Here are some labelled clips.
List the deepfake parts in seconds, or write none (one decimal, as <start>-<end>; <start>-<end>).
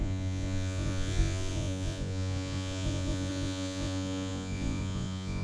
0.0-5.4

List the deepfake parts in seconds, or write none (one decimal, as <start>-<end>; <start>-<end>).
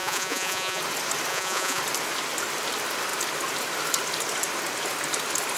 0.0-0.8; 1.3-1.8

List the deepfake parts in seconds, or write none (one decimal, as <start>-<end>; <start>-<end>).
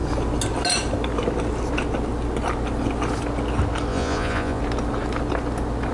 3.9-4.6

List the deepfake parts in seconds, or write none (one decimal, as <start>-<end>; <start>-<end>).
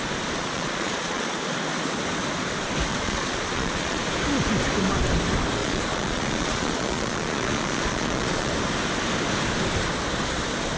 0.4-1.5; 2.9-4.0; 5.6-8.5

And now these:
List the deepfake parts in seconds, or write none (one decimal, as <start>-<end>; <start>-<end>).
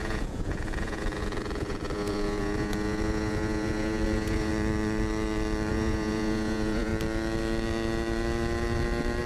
0.0-4.5; 5.7-6.9